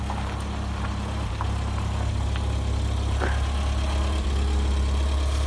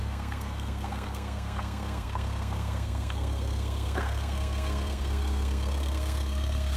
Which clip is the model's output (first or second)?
second